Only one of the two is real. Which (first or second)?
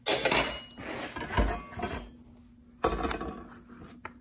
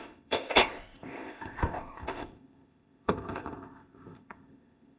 first